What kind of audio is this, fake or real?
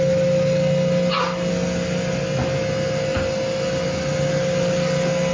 real